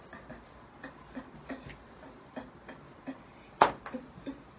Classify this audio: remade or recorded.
recorded